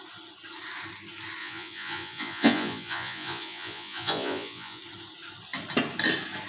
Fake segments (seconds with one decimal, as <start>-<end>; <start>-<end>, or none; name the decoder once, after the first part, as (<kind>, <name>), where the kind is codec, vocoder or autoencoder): 1.4-4.8 (vocoder, Vocos)